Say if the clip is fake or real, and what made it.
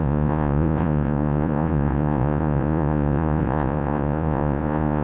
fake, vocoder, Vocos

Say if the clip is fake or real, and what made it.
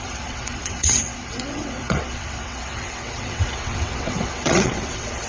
fake, vocoder, WaveNeXt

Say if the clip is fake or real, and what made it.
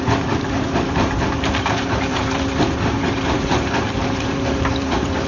fake, vocoder, BigVGAN v2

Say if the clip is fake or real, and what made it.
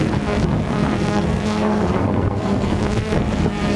fake, codec, SNAC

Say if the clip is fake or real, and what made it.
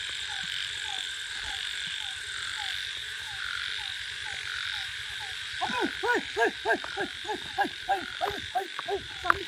real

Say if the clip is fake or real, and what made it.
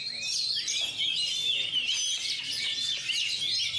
real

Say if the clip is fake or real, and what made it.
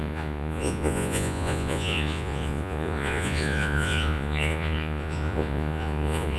fake, vocoder, Vocos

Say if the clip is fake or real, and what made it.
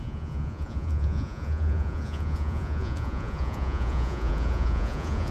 fake, vocoder, Vocos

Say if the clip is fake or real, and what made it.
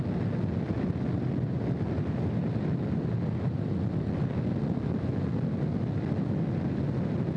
real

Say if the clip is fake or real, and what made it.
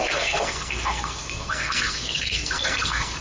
fake, codec, SNAC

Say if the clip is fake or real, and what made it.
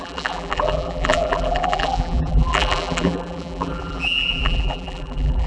fake, vocoder, BigVGAN v2